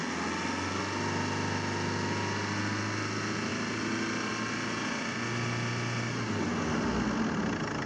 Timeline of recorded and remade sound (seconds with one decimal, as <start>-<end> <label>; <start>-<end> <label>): 0.0-7.9 recorded